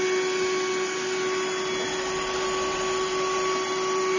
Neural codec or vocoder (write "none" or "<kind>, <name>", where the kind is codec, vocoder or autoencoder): none